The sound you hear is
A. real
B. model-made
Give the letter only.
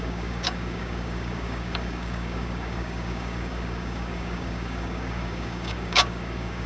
B